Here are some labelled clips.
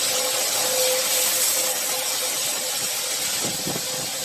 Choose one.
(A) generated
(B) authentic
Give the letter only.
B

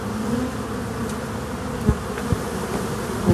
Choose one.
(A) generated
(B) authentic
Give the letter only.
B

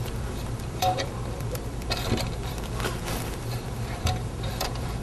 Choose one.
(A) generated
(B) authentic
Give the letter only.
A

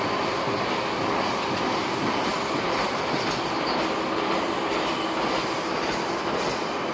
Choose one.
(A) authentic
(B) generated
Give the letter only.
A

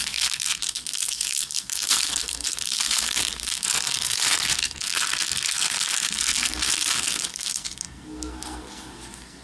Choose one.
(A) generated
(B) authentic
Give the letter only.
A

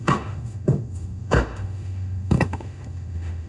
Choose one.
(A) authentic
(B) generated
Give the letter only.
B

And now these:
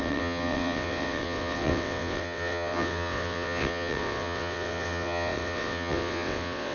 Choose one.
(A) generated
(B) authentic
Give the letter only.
A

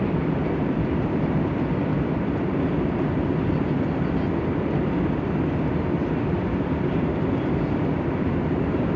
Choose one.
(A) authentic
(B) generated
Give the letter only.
B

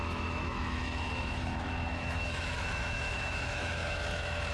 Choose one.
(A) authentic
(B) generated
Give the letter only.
B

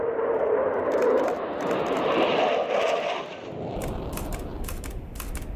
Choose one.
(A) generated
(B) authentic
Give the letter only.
B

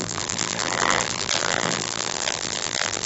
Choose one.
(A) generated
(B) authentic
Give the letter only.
A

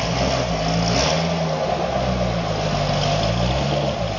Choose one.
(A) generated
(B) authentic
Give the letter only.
B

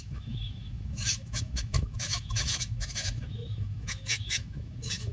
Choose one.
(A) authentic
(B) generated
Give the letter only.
B